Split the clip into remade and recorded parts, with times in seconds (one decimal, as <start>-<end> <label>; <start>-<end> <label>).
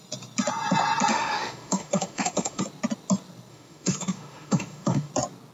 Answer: 0.0-1.1 recorded; 1.1-2.6 remade; 2.6-3.5 recorded; 3.5-5.1 remade; 5.1-5.5 recorded